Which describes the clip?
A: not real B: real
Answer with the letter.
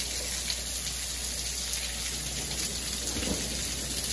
B